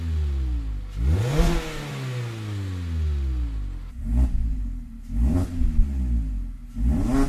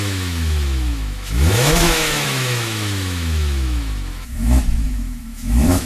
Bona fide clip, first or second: first